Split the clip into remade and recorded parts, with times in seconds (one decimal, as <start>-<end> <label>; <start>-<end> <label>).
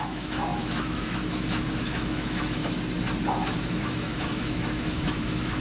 0.0-2.6 remade; 2.6-3.7 recorded; 3.7-5.6 remade